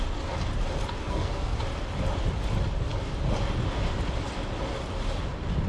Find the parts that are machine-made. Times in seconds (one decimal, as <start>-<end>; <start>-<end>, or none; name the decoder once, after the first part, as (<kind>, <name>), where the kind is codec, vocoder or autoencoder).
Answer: 1.0-1.6 (codec, SNAC)